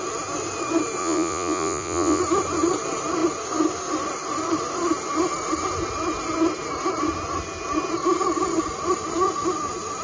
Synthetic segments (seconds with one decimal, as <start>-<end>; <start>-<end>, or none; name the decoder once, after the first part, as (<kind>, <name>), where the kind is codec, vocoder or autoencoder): 1.0-2.2 (vocoder, Vocos)